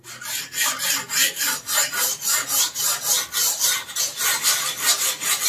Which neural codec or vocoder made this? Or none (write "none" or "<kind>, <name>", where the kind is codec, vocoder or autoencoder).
none